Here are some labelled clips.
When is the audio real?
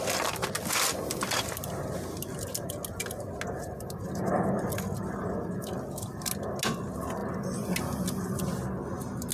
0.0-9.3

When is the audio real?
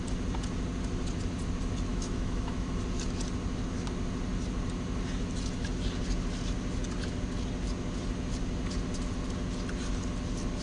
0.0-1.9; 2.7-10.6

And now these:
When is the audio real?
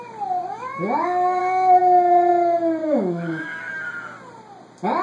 0.0-0.5; 1.4-2.8; 3.6-5.0